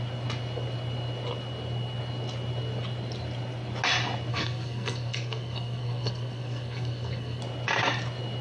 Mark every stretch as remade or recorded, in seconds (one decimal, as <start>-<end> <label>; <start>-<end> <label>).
0.0-4.3 recorded; 4.3-7.4 remade; 7.4-8.4 recorded